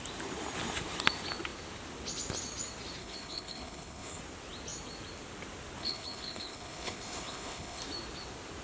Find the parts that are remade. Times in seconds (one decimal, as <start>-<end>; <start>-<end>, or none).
3.0-4.2; 5.8-7.8

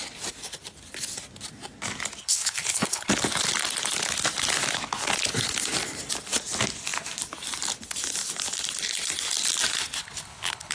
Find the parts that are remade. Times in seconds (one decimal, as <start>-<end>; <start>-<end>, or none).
2.2-3.1; 10.0-10.7

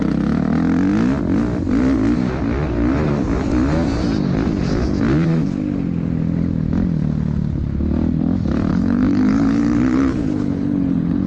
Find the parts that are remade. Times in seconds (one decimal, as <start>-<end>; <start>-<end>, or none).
8.7-11.3

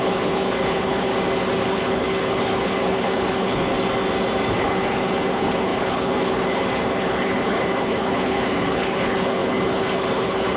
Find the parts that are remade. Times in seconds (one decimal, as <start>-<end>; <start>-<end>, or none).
0.0-1.1; 1.7-3.7; 4.6-10.6

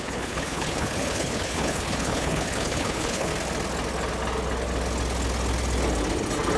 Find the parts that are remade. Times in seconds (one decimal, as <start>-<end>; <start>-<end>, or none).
0.0-3.3